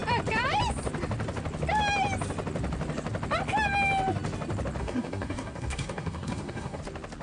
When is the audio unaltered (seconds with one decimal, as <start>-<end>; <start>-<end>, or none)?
0.0-4.8; 6.8-7.2